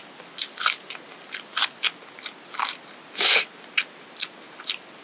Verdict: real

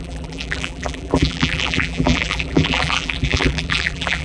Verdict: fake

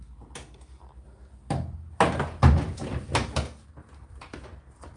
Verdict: real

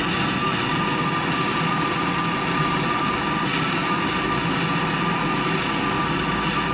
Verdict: real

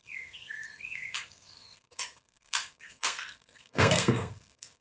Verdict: fake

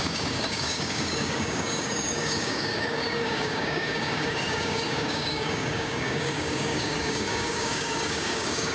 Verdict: fake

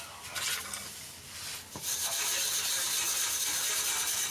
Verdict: fake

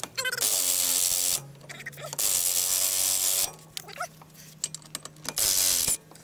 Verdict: real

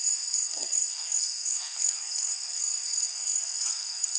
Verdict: fake